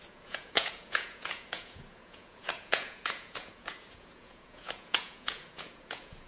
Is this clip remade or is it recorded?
remade